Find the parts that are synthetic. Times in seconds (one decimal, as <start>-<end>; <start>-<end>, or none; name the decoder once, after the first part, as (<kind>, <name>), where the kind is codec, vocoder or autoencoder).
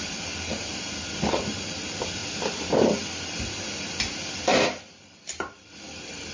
2.2-3.2 (vocoder, BigVGAN v2); 4.5-6.3